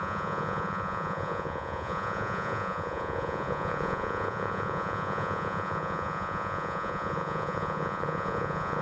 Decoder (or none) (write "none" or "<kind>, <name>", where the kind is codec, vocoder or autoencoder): vocoder, Vocos